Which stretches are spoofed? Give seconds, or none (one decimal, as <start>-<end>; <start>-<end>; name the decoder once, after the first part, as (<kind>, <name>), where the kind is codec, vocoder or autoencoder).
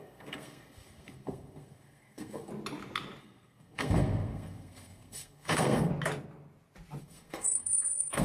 0.0-2.5 (codec, SNAC); 3.2-5.9; 7.0-8.2